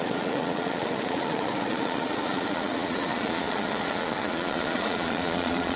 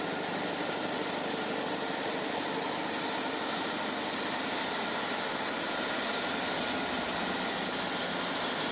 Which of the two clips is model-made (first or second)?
first